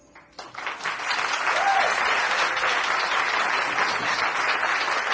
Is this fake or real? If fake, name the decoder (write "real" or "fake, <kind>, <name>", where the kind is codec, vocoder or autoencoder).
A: real